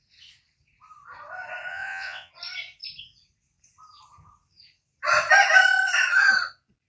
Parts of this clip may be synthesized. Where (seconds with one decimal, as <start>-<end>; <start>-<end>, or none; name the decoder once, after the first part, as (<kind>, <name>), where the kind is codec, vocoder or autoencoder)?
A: 1.7-2.3 (vocoder, WaveNeXt)